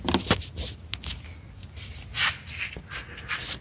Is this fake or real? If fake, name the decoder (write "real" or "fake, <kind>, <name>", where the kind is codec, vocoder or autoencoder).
real